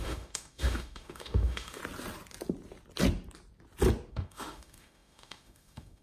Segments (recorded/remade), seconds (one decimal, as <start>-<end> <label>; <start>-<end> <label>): 0.0-1.8 remade; 1.8-4.1 recorded; 4.1-6.0 remade